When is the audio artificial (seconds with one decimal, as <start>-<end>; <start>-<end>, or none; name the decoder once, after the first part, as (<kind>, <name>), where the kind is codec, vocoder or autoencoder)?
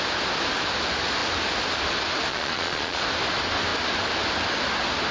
2.3-3.0 (vocoder, Vocos)